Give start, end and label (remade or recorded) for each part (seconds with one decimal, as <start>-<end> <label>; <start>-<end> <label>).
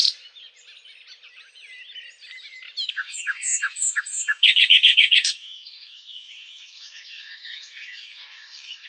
0.0-2.9 recorded; 2.9-8.9 remade